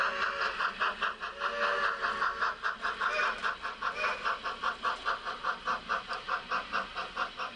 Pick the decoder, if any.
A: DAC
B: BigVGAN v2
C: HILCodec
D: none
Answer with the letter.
D